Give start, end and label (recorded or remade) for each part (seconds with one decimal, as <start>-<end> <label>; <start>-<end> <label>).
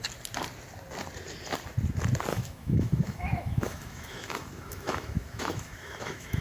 0.0-2.3 recorded; 2.3-6.4 remade